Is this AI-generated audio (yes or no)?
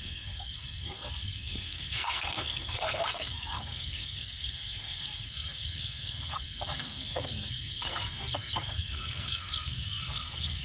yes